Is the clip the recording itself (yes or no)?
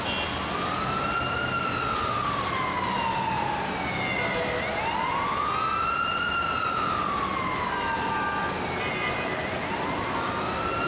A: yes